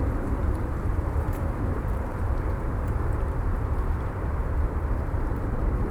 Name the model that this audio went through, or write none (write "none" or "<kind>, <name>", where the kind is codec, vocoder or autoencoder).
vocoder, BigVGAN v2